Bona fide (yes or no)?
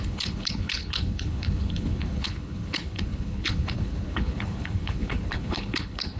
no